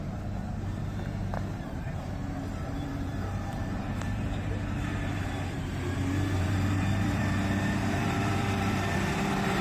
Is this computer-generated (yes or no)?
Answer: yes